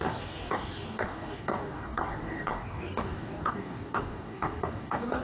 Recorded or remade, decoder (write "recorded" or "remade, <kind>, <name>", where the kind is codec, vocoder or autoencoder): remade, codec, DAC